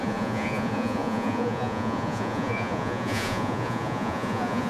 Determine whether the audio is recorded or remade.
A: remade